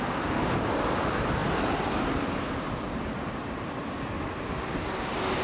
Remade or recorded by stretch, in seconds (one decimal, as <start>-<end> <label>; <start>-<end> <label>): 0.0-5.4 recorded

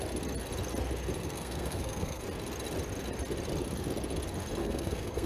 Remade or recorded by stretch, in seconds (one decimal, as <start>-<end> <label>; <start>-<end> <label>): 0.0-1.2 recorded; 1.2-2.2 remade; 2.2-4.6 recorded; 4.6-5.3 remade

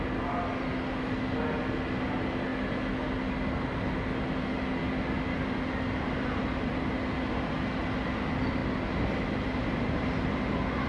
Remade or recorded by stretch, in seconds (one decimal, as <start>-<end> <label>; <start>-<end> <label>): 0.0-10.9 recorded

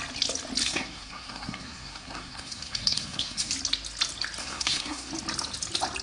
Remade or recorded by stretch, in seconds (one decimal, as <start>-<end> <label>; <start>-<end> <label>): 0.0-0.6 recorded; 0.6-3.5 remade; 3.5-4.4 recorded; 4.4-5.1 remade; 5.1-6.0 recorded